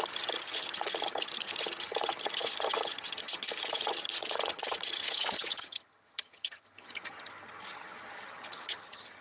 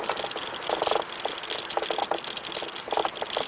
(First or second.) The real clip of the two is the second